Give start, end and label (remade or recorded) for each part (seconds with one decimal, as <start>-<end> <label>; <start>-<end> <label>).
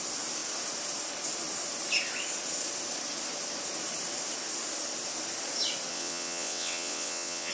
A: 0.0-5.9 recorded; 5.9-7.5 remade